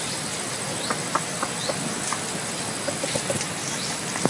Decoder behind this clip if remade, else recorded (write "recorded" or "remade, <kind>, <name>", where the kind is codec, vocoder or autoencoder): recorded